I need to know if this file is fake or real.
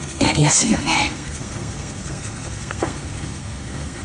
fake